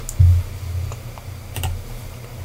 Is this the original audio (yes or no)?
yes